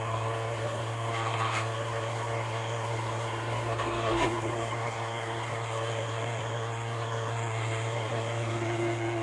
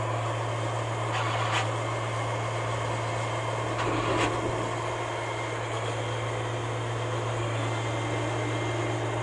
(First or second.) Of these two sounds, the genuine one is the second